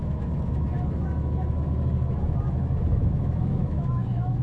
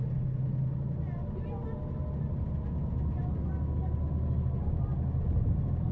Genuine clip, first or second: second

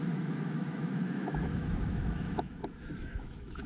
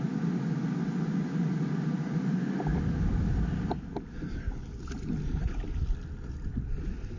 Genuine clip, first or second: second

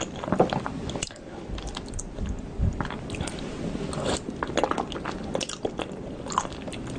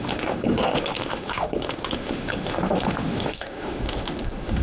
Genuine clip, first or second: first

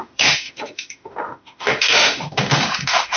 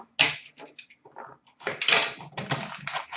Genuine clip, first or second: second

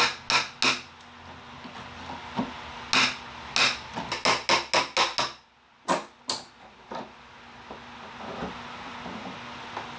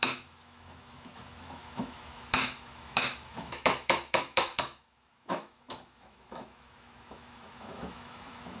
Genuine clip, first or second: first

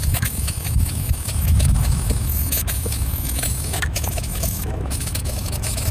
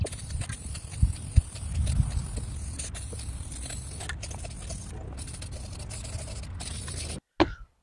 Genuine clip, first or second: second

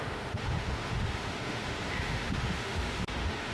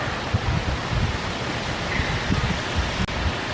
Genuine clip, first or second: second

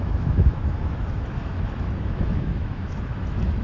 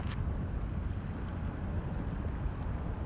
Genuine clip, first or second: second